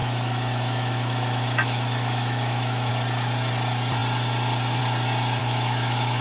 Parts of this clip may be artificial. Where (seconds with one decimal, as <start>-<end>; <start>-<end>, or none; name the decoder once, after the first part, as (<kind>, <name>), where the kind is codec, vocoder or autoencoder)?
0.0-2.9 (autoencoder, DAC-VAE); 5.4-6.2